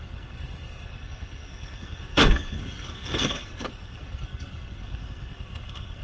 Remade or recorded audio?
remade